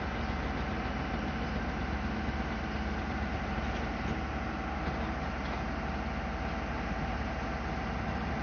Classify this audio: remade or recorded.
recorded